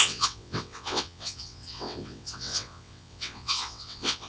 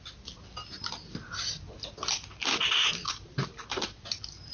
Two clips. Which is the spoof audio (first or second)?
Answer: first